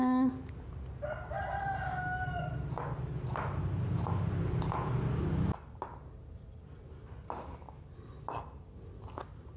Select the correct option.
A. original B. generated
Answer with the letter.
A